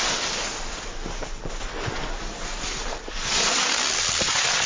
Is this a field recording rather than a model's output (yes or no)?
yes